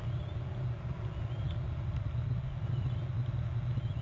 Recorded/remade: recorded